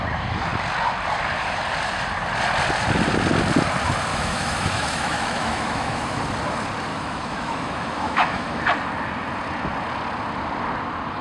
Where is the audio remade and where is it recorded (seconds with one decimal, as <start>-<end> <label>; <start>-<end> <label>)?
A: 0.0-4.1 recorded; 4.1-6.2 remade; 6.2-6.9 recorded; 6.9-8.6 remade; 8.6-11.2 recorded